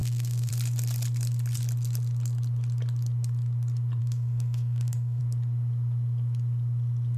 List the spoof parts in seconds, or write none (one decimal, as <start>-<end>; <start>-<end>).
0.0-0.5; 4.0-5.2